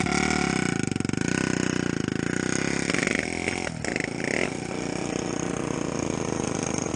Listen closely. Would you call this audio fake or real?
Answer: real